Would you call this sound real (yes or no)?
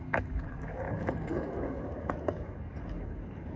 no